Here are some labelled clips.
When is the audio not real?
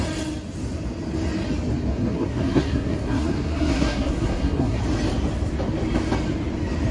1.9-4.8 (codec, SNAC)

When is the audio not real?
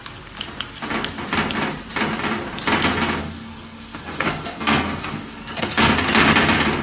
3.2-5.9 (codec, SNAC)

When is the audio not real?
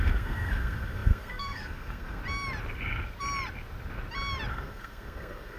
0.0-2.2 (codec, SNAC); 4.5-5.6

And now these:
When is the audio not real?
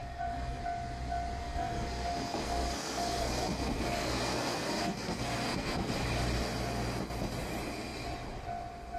0.0-0.6 (codec, SNAC); 1.4-5.9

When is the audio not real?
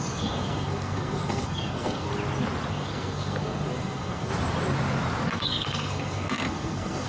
0.0-2.1 (codec, SNAC); 2.7-4.3; 5.3-7.1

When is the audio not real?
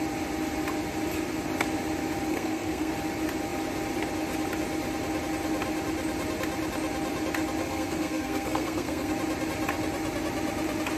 2.3-2.9 (codec, SNAC); 7.6-9.1